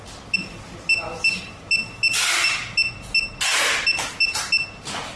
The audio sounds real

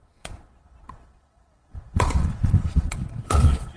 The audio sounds fake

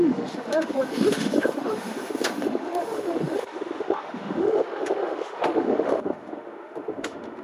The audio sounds fake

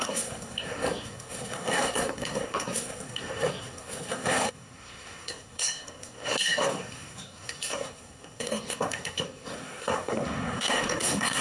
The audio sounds fake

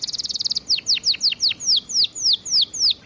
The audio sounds real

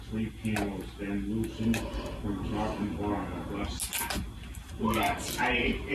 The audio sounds real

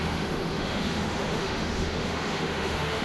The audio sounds fake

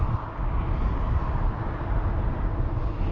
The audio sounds real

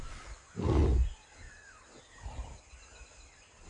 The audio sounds real